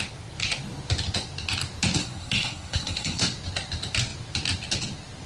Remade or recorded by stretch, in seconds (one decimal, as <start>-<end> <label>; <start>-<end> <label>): 0.0-2.0 recorded; 2.0-3.2 remade; 3.2-5.3 recorded